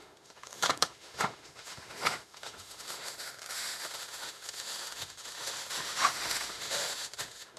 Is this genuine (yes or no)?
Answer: no